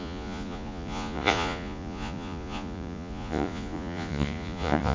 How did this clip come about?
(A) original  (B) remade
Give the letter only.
B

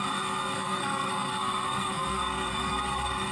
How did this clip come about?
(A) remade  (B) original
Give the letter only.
A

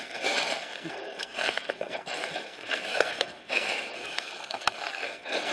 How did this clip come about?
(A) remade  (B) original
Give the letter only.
A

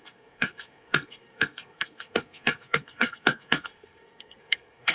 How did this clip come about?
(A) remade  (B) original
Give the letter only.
A